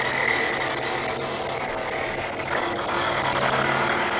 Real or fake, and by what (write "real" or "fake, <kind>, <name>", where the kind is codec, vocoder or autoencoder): real